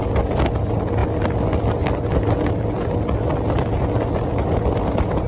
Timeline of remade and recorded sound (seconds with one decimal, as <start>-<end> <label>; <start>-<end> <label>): 0.0-5.3 recorded